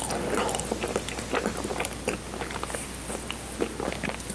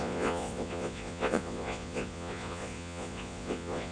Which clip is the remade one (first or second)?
second